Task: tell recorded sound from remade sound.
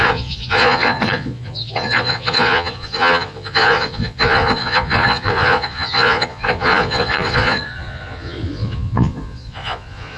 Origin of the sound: remade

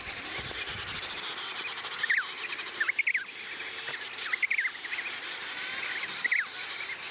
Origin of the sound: recorded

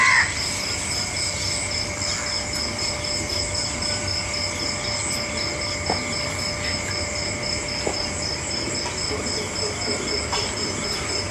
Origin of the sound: recorded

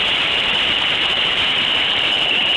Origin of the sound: remade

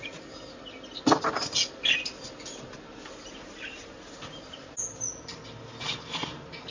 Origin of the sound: recorded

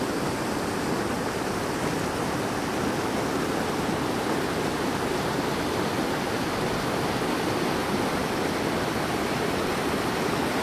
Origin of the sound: recorded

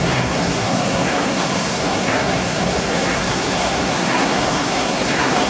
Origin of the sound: remade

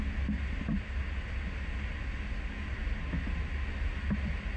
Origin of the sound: recorded